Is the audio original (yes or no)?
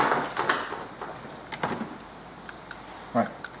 yes